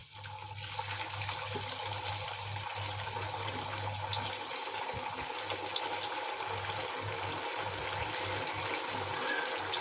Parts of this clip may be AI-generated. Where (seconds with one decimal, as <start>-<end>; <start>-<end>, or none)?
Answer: none